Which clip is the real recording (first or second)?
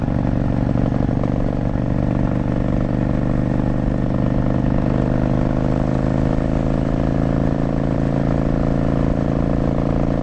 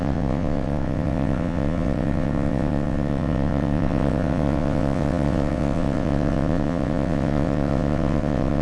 first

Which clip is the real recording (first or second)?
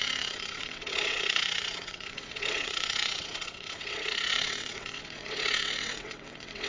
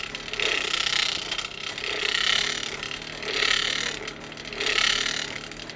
second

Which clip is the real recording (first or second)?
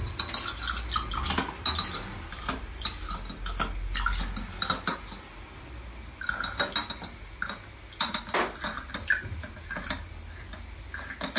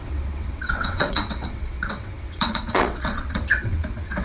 first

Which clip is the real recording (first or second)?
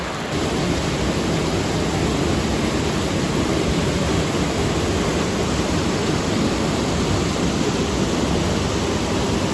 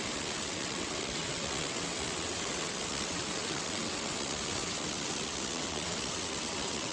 first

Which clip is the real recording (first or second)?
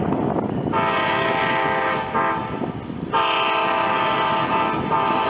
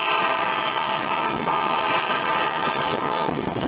first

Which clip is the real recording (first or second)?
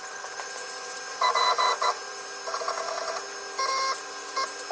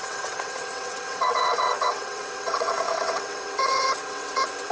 first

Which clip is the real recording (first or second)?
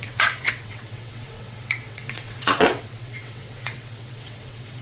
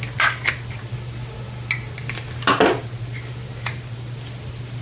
second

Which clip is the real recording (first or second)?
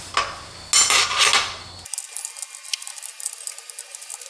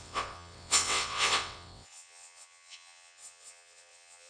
first